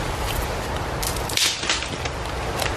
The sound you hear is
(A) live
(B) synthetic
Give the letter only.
A